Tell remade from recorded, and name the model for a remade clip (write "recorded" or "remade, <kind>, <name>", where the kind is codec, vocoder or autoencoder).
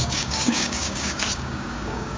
remade, codec, DAC